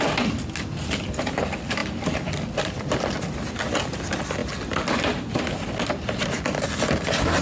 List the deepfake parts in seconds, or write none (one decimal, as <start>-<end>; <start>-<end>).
none